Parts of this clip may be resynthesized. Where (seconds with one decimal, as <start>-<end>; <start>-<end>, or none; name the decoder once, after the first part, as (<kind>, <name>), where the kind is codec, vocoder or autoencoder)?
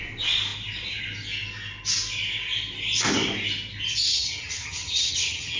4.1-5.6 (vocoder, HiFi-GAN)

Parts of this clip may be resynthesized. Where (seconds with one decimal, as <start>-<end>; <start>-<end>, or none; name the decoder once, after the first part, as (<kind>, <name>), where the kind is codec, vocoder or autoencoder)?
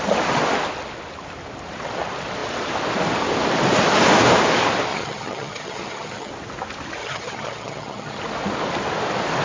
4.9-6.3 (vocoder, HiFi-GAN); 7.0-8.2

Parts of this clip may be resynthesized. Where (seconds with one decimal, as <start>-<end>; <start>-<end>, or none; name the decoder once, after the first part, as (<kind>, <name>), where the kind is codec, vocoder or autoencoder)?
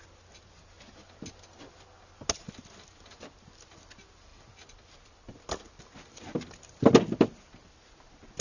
none